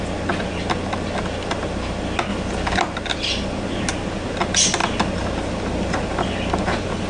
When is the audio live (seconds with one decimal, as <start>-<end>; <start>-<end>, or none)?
0.0-7.1